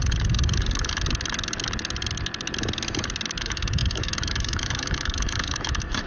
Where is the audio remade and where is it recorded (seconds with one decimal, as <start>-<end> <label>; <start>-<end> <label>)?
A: 0.0-3.4 recorded; 3.4-6.1 remade